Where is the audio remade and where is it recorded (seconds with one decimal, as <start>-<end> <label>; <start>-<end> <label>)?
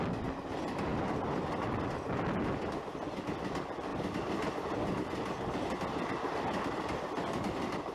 0.0-7.9 recorded